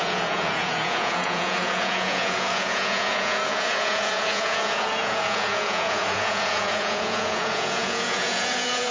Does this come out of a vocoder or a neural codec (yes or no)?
yes